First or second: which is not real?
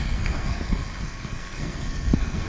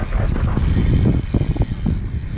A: first